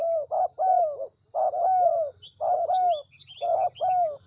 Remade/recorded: recorded